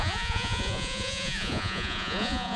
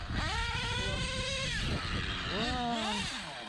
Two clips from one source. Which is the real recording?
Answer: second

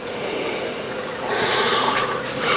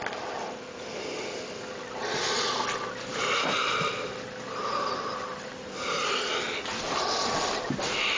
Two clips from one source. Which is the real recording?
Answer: second